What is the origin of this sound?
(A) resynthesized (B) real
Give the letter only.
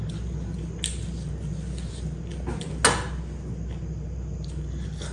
B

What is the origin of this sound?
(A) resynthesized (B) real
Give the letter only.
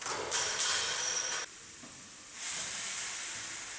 A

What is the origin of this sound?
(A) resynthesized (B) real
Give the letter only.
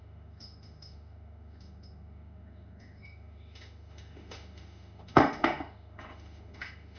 A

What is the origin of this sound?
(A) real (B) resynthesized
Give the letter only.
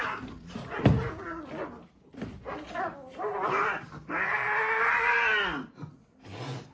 A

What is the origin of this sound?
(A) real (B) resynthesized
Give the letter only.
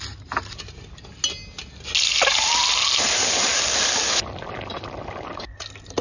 A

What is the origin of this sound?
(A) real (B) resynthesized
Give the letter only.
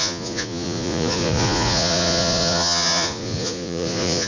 B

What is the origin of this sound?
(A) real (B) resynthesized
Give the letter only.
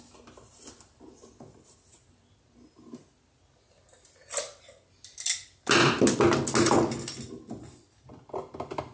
A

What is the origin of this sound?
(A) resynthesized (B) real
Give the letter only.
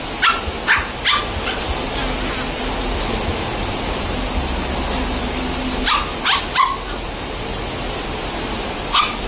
B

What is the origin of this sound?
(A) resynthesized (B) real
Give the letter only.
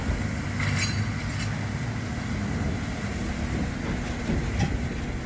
B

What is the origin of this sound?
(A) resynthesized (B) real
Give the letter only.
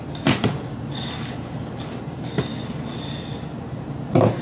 B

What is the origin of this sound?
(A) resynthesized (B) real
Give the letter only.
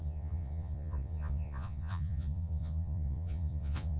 A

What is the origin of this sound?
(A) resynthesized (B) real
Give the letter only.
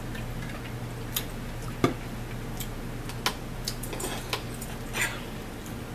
B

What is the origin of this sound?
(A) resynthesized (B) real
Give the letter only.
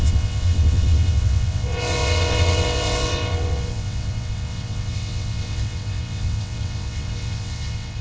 A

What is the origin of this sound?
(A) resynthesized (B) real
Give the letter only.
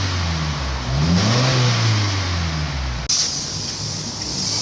B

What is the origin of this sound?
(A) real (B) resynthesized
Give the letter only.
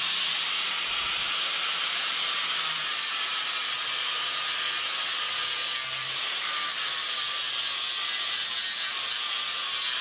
A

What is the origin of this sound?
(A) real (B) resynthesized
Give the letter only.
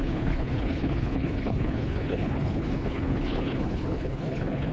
B